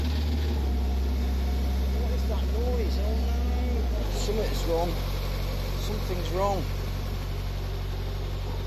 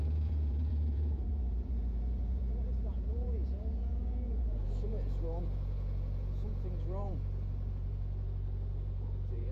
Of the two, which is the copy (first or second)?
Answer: second